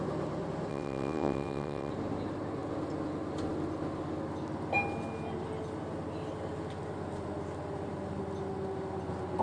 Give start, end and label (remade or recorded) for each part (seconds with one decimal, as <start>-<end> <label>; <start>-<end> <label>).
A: 0.0-0.7 recorded; 0.7-1.9 remade; 1.9-9.4 recorded

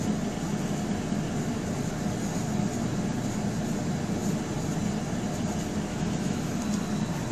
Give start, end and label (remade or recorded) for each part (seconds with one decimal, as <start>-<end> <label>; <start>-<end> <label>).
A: 0.0-5.9 recorded; 5.9-6.5 remade; 6.5-7.3 recorded

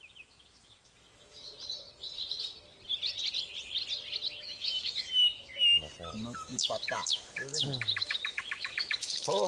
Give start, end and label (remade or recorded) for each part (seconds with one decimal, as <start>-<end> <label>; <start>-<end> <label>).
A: 0.0-1.4 remade; 1.4-4.4 recorded; 4.4-5.5 remade; 5.5-6.1 recorded; 6.1-9.5 remade

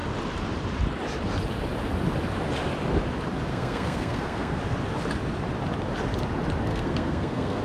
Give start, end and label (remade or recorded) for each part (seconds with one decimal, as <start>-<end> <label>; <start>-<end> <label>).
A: 0.0-3.5 recorded; 3.5-4.6 remade; 4.6-6.7 recorded; 6.7-7.6 remade

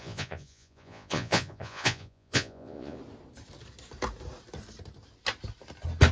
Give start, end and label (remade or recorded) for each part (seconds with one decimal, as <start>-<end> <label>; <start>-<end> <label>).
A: 0.0-3.0 remade; 3.0-6.1 recorded

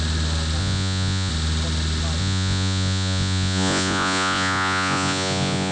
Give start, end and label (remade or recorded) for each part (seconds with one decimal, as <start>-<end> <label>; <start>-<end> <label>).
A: 0.0-0.6 recorded; 0.6-1.3 remade; 1.3-2.2 recorded; 2.2-5.7 remade

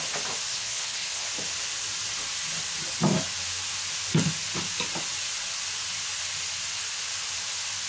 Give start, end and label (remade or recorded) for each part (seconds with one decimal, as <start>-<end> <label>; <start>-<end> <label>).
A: 0.0-0.5 recorded; 0.5-1.3 remade; 1.3-7.9 recorded

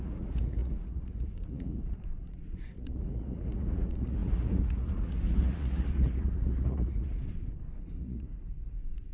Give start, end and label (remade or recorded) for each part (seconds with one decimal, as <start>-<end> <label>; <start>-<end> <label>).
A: 0.0-7.2 remade; 7.2-7.8 recorded; 7.8-9.1 remade